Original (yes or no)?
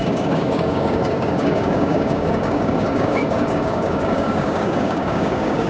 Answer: no